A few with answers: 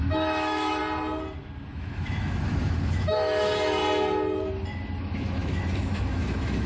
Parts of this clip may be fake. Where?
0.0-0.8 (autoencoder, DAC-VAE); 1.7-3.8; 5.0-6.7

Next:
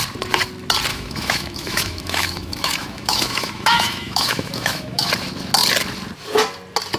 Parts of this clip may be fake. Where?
0.9-5.1 (autoencoder, DAC-VAE)

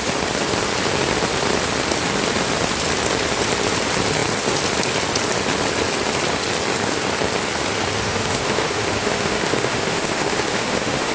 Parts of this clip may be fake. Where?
8.0-11.1 (autoencoder, DAC-VAE)

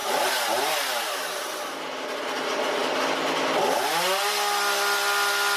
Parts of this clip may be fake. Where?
none

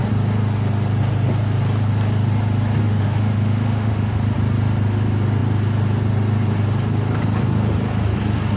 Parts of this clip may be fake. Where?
2.8-4.1 (autoencoder, DAC-VAE)